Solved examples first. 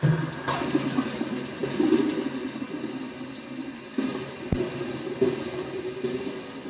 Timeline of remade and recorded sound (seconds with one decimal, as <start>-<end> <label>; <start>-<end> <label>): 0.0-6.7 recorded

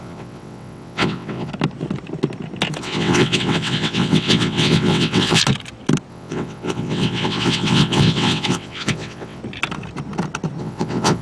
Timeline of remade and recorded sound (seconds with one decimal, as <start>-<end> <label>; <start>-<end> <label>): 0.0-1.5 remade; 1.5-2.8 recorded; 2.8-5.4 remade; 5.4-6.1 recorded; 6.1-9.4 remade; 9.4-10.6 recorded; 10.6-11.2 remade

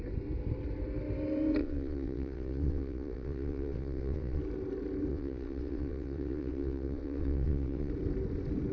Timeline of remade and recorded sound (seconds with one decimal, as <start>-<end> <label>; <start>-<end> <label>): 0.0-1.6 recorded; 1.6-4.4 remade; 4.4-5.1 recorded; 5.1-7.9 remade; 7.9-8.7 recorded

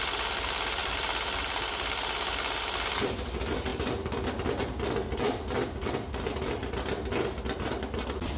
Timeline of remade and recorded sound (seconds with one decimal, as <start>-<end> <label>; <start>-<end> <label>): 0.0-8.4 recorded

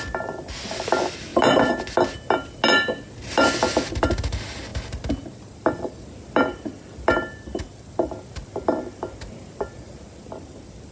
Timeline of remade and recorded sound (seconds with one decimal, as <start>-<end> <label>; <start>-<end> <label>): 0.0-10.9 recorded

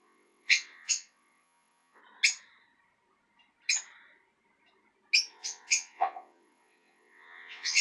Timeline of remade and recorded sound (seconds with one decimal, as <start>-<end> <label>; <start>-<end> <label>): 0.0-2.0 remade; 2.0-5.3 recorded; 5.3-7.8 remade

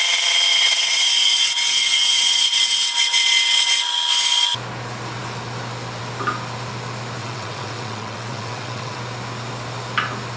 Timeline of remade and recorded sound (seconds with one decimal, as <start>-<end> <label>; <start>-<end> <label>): 0.0-0.5 recorded; 0.5-3.8 remade; 3.8-7.2 recorded; 7.2-9.0 remade; 9.0-10.4 recorded

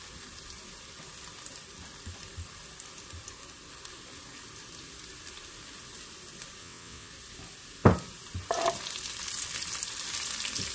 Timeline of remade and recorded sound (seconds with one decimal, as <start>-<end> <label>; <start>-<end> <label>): 0.0-6.6 recorded; 6.6-7.1 remade; 7.1-10.7 recorded